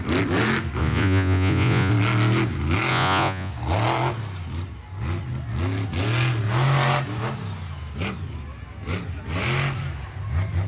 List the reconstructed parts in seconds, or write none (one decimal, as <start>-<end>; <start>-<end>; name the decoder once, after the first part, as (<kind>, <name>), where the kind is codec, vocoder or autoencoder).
0.8-1.9 (vocoder, Vocos); 2.9-3.5